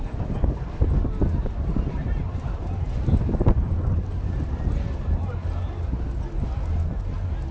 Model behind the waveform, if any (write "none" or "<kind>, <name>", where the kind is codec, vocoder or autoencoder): none